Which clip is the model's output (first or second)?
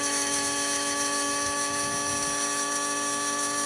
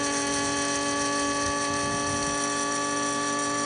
first